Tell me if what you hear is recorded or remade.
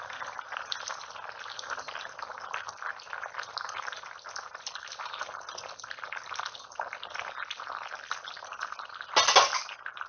recorded